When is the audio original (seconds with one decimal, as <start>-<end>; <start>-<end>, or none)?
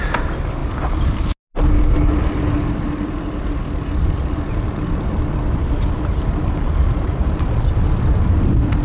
0.0-8.8